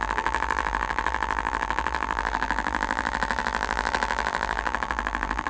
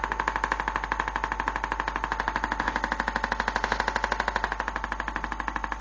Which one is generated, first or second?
first